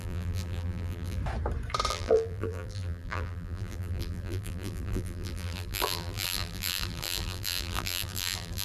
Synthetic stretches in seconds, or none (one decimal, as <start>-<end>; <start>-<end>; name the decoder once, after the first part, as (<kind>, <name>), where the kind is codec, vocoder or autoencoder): 0.0-1.2 (vocoder, BigVGAN v2); 1.9-8.6